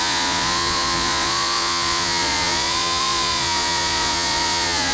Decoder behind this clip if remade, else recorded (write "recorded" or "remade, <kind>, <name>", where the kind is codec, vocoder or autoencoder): remade, vocoder, Vocos